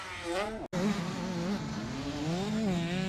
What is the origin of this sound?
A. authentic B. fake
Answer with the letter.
A